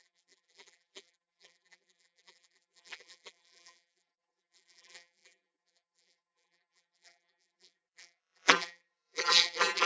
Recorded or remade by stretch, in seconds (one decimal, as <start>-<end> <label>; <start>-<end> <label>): 0.0-9.9 remade